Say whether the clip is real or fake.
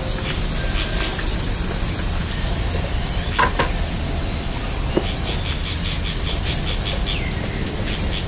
real